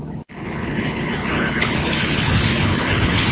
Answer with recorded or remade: remade